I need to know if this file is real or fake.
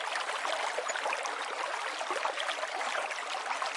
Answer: real